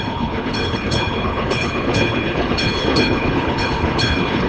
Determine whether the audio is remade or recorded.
remade